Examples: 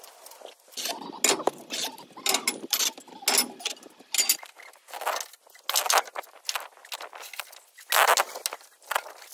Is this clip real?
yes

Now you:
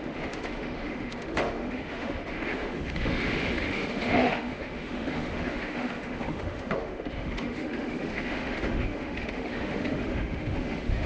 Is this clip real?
no